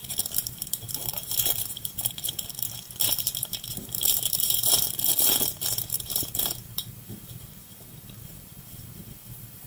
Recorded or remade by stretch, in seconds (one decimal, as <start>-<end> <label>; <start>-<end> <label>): 0.0-7.6 remade; 7.6-8.2 recorded; 8.2-9.7 remade